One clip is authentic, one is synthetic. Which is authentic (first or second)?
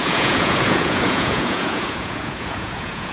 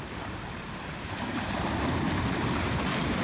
second